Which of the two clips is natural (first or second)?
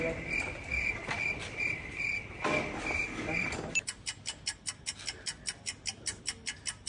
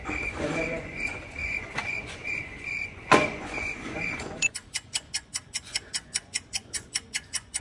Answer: first